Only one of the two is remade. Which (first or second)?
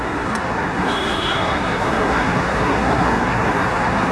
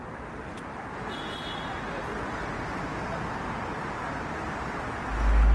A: first